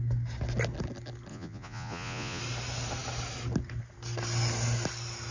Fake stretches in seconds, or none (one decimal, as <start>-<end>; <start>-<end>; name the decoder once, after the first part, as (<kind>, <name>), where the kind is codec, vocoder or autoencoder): 1.3-2.4 (vocoder, Vocos)